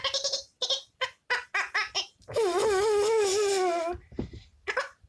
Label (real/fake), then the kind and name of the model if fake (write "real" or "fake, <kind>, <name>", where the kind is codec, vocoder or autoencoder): real